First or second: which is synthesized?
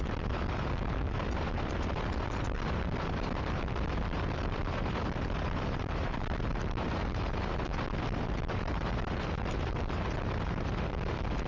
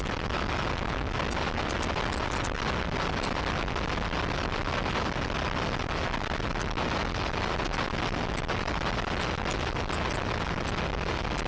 first